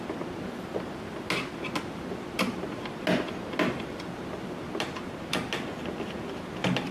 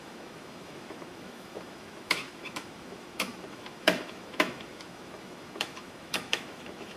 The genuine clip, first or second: first